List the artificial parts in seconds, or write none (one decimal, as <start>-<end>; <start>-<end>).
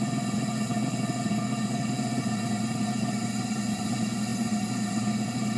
2.1-3.6; 4.3-5.6